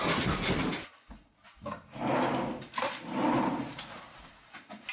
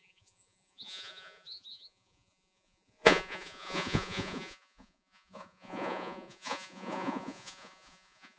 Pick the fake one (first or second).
second